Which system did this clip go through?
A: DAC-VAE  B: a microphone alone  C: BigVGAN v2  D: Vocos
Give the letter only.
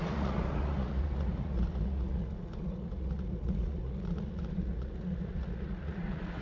D